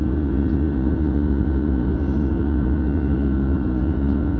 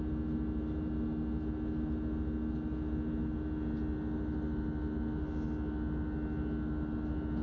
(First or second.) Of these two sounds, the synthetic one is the first